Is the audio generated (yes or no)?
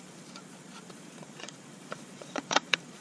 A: yes